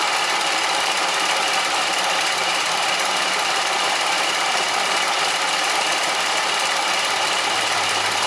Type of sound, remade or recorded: remade